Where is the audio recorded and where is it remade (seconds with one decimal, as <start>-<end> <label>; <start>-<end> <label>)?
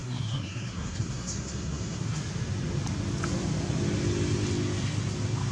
0.0-2.2 remade; 2.2-5.5 recorded